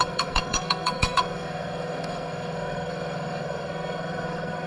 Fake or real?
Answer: fake